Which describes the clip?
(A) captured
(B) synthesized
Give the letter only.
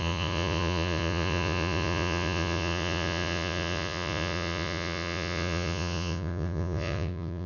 B